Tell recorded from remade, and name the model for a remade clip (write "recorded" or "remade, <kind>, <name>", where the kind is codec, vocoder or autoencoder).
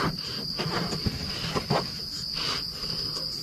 recorded